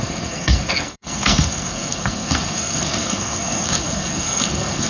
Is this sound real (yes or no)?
no